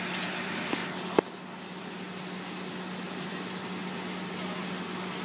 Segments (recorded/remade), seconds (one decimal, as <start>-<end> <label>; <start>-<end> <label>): 0.0-5.2 recorded